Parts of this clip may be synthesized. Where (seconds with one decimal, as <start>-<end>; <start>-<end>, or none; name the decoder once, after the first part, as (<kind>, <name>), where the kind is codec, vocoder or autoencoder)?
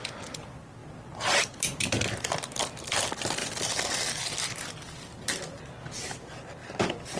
0.0-7.2 (vocoder, BigVGAN v2)